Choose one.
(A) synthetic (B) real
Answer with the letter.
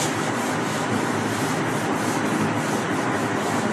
B